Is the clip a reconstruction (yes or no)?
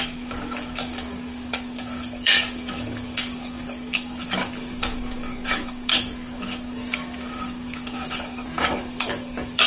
yes